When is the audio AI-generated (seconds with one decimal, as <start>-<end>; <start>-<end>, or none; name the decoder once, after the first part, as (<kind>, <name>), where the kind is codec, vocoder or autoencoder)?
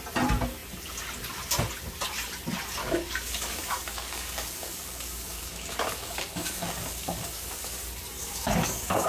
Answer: 2.8-7.8 (codec, DAC); 8.2-9.1